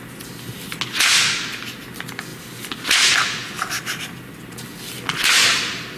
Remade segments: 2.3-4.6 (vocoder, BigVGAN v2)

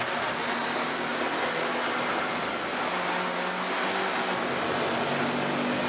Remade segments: none

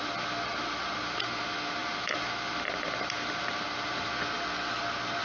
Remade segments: 0.5-1.4 (vocoder, BigVGAN v2); 1.8-4.1

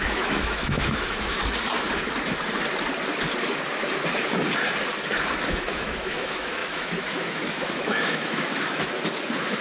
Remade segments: 0.0-1.4 (autoencoder, DAC-VAE); 5.5-9.6

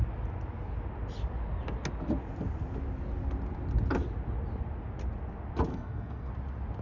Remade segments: 5.7-6.3 (codec, SNAC)

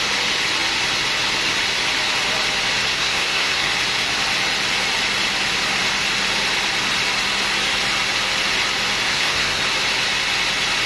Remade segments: 2.9-3.7 (codec, SNAC); 9.1-9.6

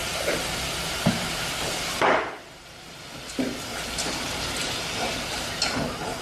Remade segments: 0.0-3.7 (vocoder, BigVGAN v2)